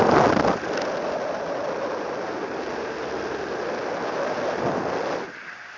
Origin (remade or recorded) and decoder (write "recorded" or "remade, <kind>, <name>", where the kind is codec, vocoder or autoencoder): recorded